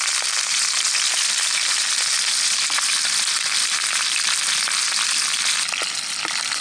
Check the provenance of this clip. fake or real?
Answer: real